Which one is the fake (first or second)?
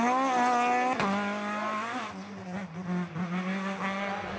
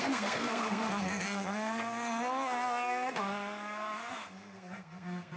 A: second